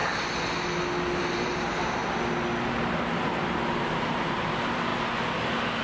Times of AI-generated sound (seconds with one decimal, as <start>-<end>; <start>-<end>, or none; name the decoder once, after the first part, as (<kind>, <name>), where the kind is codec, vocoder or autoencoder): 1.2-2.0 (vocoder, BigVGAN v2); 4.1-4.9